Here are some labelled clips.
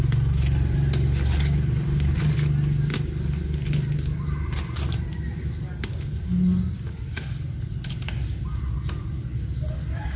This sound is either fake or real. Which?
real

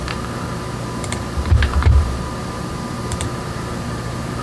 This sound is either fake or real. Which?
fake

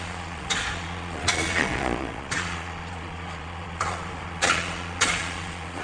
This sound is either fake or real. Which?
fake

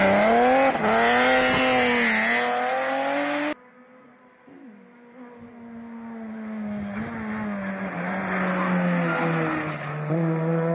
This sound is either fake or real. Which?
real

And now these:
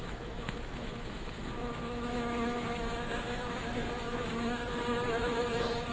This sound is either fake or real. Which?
fake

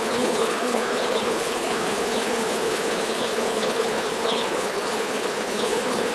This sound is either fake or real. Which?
fake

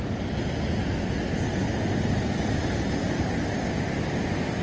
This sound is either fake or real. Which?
real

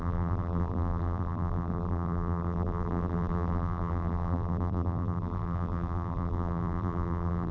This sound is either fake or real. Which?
fake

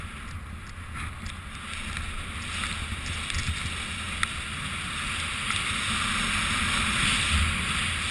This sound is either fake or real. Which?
real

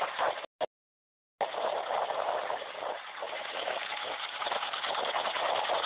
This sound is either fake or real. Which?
real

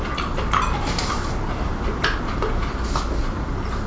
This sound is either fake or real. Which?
real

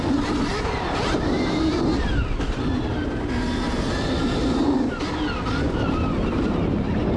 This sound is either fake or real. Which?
real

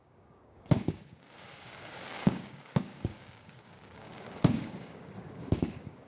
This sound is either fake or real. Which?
fake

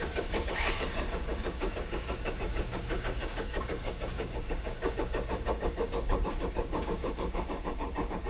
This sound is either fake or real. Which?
fake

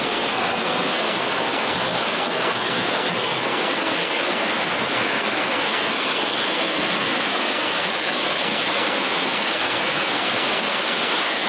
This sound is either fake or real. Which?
fake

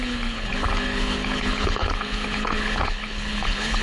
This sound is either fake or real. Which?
fake